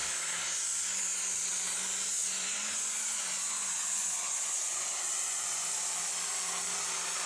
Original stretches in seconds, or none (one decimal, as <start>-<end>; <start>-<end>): 0.0-2.2; 5.9-7.3

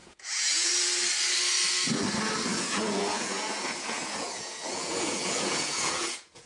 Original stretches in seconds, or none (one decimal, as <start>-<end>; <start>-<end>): 0.7-2.5

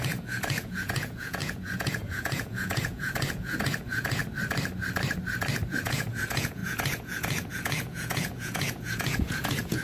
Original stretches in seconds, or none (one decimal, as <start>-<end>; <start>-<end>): 4.2-5.8

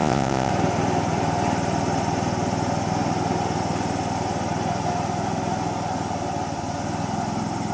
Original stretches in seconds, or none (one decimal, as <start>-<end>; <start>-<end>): 0.5-7.7

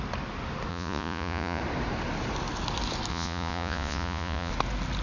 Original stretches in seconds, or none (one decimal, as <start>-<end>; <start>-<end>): 0.0-0.7; 1.6-3.1; 4.5-5.0

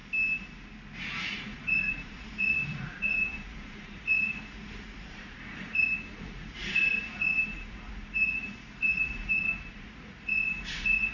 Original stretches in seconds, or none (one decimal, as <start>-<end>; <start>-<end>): 0.0-1.2

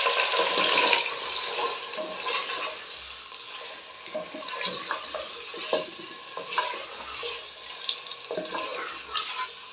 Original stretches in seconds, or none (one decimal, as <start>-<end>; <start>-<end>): 0.0-9.7

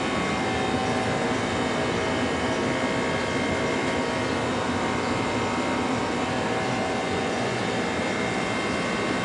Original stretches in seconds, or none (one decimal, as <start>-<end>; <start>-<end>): 0.0-7.0; 7.6-9.2